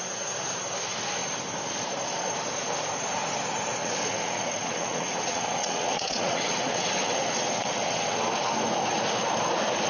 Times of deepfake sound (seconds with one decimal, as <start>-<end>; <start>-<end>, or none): 3.8-8.3